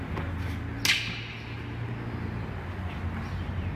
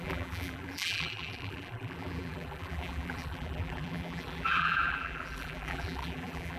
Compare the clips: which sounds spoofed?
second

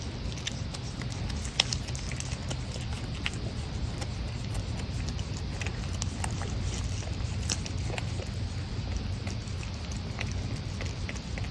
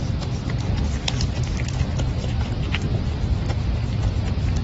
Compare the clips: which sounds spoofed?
second